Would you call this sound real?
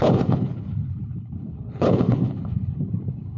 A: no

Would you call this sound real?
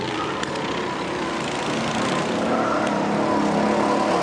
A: yes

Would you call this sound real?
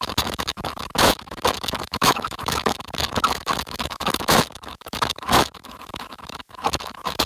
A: no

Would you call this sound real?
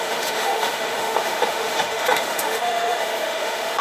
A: no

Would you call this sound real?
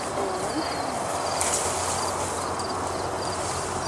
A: yes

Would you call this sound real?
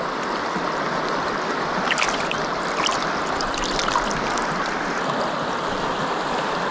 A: yes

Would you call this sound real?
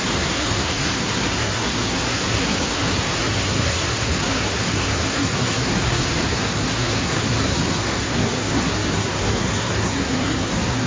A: no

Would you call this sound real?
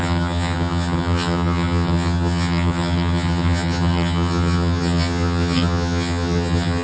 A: no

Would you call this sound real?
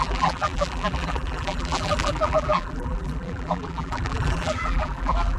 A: no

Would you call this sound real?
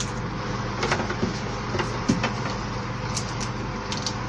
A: yes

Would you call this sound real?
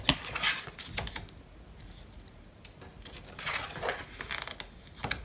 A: yes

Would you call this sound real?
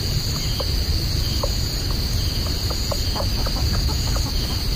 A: yes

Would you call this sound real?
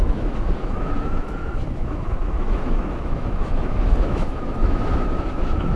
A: no